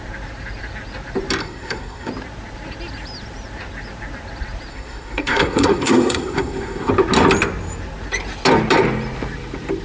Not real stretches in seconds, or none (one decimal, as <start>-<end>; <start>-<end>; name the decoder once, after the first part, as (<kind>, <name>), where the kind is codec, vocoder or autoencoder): 1.4-2.1 (codec, SNAC); 4.7-6.9